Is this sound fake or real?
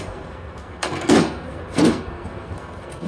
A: fake